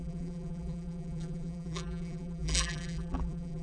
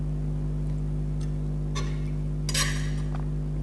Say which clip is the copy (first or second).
first